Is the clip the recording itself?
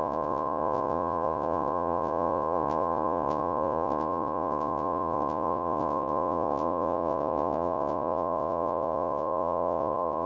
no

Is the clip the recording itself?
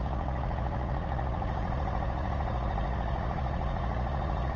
no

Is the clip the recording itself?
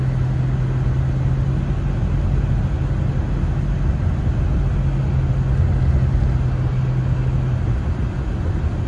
yes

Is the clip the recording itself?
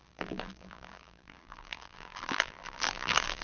no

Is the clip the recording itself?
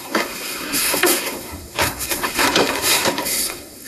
no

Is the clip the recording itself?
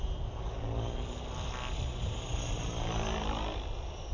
yes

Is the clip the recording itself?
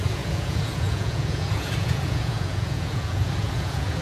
no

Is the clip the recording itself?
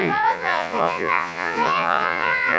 no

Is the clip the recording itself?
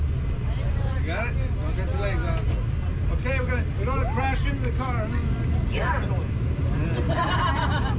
yes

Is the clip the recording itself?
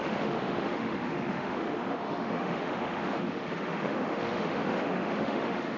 no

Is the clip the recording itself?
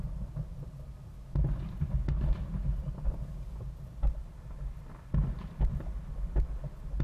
yes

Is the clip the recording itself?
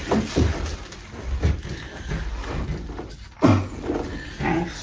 yes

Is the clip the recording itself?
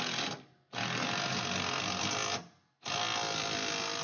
yes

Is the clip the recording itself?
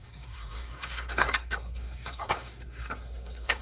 no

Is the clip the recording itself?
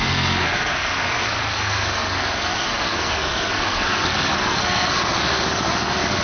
no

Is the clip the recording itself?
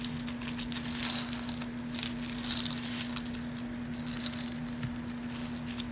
yes